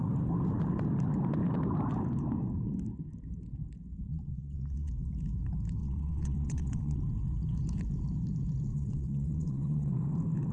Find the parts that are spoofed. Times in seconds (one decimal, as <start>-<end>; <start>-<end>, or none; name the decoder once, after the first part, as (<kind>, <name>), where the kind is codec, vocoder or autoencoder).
4.1-4.9 (vocoder, WaveNeXt); 5.8-7.0; 8.7-9.9